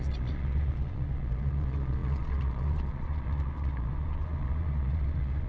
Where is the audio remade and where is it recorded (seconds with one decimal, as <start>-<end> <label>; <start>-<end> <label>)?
0.0-5.5 remade